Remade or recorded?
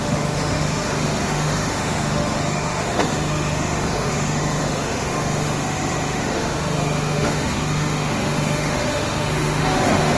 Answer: remade